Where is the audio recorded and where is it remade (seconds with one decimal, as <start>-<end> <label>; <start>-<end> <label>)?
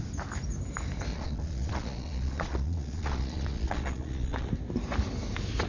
0.0-1.1 recorded; 1.1-4.5 remade; 4.5-5.7 recorded